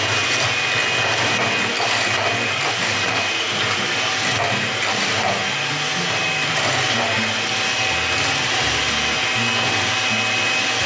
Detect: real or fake real